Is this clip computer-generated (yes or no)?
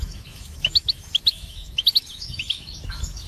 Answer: yes